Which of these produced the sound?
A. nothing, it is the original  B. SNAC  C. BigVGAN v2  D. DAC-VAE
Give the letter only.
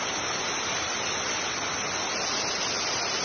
A